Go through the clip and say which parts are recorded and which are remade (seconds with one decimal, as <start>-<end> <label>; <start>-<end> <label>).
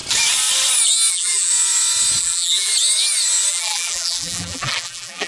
0.0-1.1 recorded; 1.1-1.5 remade; 1.5-2.2 recorded; 2.2-2.7 remade; 2.7-3.5 recorded; 3.5-5.3 remade